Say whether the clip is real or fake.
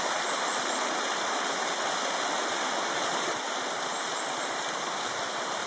real